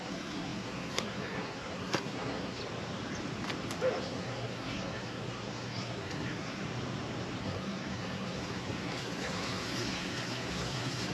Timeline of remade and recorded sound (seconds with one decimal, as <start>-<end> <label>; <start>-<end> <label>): 0.0-2.6 remade; 2.6-4.0 recorded; 4.0-6.6 remade; 6.6-7.4 recorded; 7.4-11.1 remade